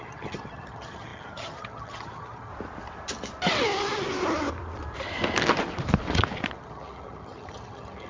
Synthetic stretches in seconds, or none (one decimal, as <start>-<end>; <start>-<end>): 0.0-2.5; 6.5-8.1